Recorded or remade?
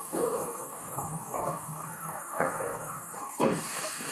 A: remade